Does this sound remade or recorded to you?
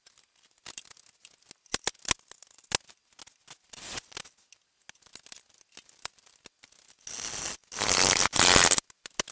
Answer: recorded